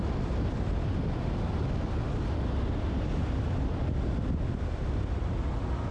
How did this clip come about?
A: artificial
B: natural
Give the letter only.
B